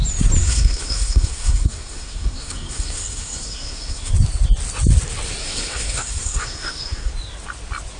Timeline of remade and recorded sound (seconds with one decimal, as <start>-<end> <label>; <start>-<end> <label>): 0.0-0.4 recorded; 0.4-4.1 remade; 4.1-5.4 recorded; 5.4-7.1 remade; 7.1-8.0 recorded